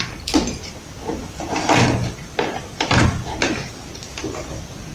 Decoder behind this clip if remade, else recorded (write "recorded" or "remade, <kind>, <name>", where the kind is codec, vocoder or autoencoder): recorded